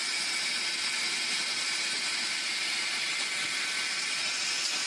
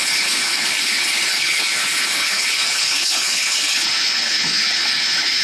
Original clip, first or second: first